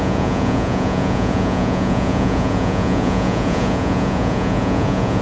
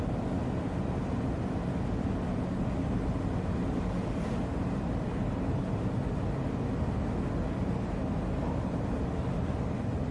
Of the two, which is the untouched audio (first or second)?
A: second